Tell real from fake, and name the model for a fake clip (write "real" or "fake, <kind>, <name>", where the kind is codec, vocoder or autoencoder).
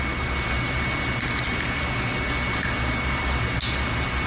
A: real